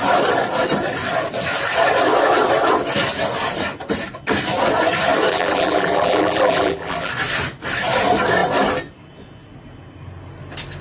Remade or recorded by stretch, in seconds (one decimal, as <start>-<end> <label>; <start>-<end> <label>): 0.0-5.3 recorded; 5.3-7.1 remade; 7.1-10.8 recorded